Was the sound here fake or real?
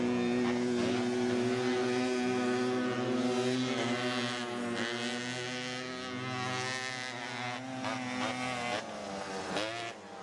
real